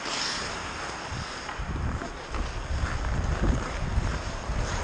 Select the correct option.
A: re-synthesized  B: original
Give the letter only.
B